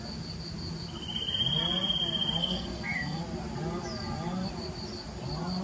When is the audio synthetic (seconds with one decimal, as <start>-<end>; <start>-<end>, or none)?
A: 2.4-3.2